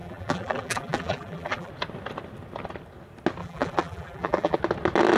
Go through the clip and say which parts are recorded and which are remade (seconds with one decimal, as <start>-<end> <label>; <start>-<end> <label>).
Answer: 0.0-1.7 remade; 1.7-3.4 recorded; 3.4-4.6 remade; 4.6-5.2 recorded